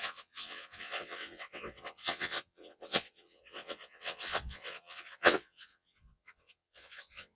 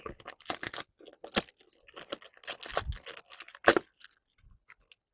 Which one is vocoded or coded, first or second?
first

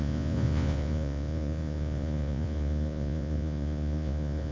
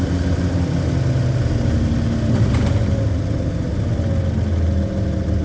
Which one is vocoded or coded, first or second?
first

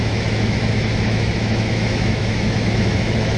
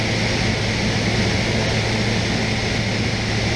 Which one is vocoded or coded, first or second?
first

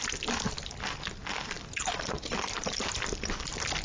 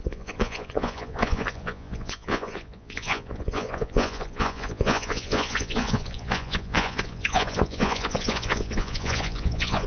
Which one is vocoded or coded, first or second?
second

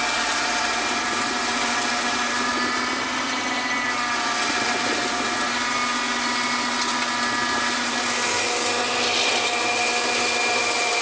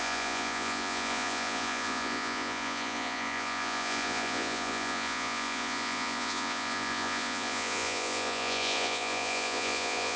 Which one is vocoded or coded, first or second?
second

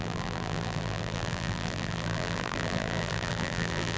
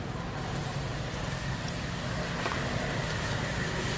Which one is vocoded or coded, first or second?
first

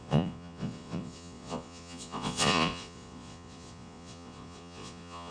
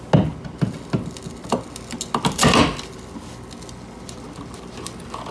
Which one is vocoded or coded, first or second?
first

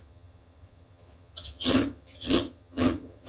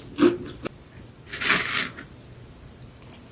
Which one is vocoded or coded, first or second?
first